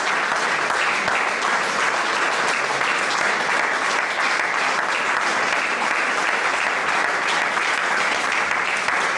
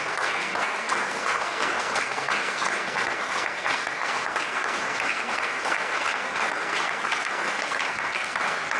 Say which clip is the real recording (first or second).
first